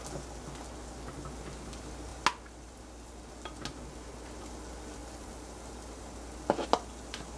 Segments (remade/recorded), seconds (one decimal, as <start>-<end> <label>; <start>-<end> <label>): 0.0-7.4 recorded